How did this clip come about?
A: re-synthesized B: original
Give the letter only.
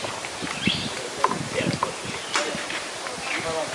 A